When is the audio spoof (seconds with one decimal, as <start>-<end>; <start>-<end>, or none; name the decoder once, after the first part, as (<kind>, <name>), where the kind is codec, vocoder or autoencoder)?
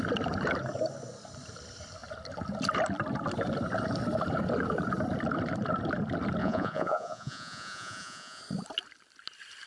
6.4-8.4 (vocoder, Vocos)